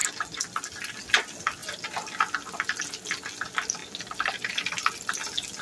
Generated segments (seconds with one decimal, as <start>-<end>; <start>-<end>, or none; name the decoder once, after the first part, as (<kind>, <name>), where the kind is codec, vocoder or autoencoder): none

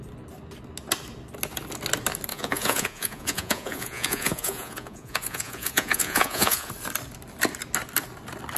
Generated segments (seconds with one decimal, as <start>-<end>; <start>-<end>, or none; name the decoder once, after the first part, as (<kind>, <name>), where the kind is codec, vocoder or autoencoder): 2.3-6.7 (vocoder, Vocos)

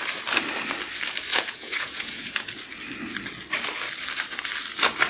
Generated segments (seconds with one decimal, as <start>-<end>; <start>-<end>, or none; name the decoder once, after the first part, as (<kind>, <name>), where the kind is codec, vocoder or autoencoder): 1.3-2.5 (vocoder, Vocos)

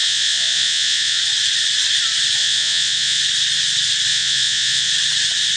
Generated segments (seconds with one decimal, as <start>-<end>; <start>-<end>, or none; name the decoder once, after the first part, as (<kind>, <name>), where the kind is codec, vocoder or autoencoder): 0.0-1.2 (vocoder, Vocos); 2.4-3.2; 4.1-4.9

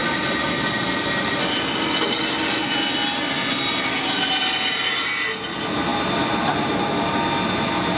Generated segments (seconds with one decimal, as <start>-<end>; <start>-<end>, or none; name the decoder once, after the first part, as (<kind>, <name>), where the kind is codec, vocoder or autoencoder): none